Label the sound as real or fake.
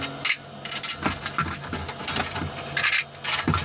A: real